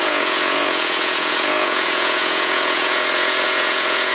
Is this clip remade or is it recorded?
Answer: remade